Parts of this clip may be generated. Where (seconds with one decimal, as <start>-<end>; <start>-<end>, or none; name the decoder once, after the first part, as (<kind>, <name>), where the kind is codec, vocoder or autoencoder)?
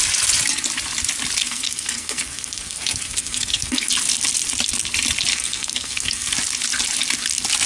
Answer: 1.4-3.9 (codec, SNAC); 5.3-6.3